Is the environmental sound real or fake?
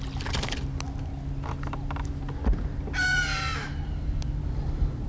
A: real